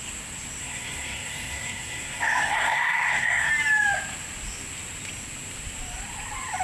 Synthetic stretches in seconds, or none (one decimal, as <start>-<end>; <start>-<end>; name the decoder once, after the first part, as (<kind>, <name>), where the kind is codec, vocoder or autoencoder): 0.6-3.5 (codec, SNAC)